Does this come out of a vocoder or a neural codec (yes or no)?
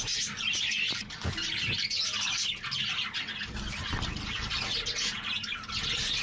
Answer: no